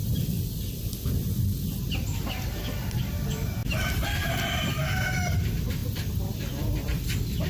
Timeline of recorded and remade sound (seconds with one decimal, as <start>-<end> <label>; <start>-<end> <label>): 0.0-0.8 remade; 0.8-3.6 recorded; 3.6-4.7 remade; 4.7-7.5 recorded